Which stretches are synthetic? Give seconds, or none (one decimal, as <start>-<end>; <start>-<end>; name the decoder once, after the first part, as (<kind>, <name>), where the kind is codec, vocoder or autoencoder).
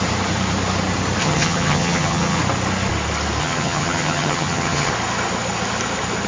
1.2-2.4 (vocoder, HiFi-GAN); 3.4-4.9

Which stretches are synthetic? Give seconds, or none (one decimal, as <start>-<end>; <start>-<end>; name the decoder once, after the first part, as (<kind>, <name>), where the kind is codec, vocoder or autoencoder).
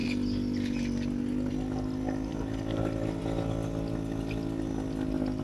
none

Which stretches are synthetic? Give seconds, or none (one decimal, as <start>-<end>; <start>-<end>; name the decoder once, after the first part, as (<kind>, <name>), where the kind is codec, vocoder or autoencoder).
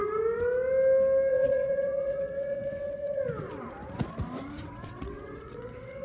1.3-3.2 (vocoder, WaveNeXt); 4.6-6.0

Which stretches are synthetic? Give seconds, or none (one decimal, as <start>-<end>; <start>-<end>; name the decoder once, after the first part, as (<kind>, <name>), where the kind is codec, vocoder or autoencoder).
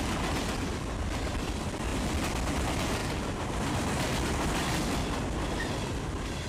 0.0-1.9 (vocoder, BigVGAN v2); 2.5-6.5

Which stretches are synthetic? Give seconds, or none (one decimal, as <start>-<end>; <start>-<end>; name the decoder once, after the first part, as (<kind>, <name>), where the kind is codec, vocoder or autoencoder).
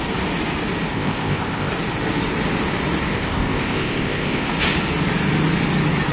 0.9-1.7 (codec, ZipCodec); 3.1-4.5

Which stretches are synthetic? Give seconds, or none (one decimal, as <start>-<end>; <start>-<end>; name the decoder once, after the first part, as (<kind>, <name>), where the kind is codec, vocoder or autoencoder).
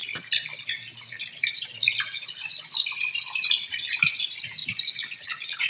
0.0-3.4 (vocoder, BigVGAN v2); 4.6-5.2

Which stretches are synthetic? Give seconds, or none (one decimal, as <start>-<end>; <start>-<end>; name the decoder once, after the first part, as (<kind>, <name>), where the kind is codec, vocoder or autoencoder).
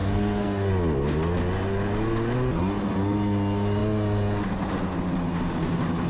0.0-0.7 (codec, SNAC)